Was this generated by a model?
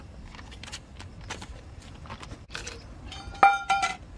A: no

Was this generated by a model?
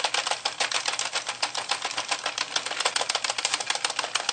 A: no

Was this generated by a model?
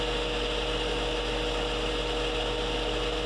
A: no